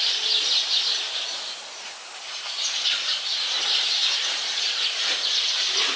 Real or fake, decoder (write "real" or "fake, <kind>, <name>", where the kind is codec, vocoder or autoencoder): real